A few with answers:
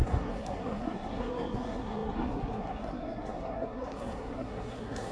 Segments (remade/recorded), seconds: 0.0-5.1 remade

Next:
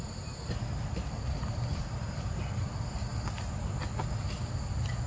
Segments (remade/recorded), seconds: 0.0-1.7 recorded; 1.7-2.4 remade; 2.4-3.1 recorded; 3.1-3.8 remade; 3.8-5.1 recorded

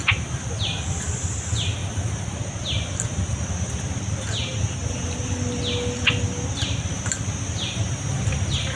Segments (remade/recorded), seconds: 0.0-8.8 recorded

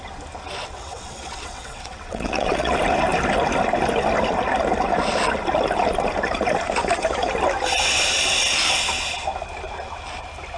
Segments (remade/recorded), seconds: 0.0-0.6 recorded; 0.6-2.7 remade; 2.7-10.6 recorded

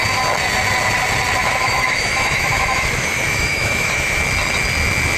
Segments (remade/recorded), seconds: 0.0-1.4 recorded; 1.4-4.2 remade; 4.2-5.2 recorded

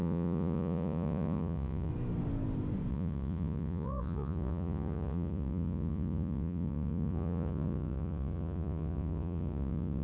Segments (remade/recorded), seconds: 0.0-1.9 remade; 1.9-2.9 recorded; 2.9-10.0 remade

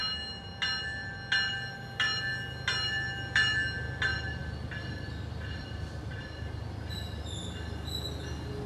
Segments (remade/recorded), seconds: 0.0-8.7 recorded